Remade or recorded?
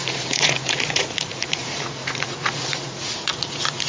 remade